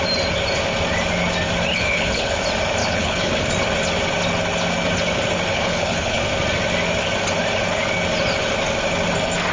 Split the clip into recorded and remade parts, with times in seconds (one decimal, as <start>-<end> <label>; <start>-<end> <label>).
0.0-1.7 recorded; 1.7-2.4 remade; 2.4-2.8 recorded; 2.8-3.5 remade; 3.5-5.5 recorded; 5.5-6.2 remade; 6.2-9.5 recorded

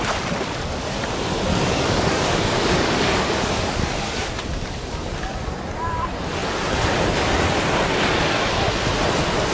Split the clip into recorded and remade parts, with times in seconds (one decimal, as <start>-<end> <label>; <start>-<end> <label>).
0.0-1.5 recorded; 1.5-4.3 remade; 4.3-9.5 recorded